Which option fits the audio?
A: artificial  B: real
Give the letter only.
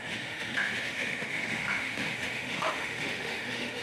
A